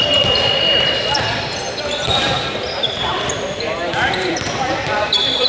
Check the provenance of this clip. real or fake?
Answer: fake